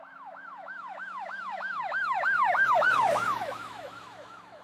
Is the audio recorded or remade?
remade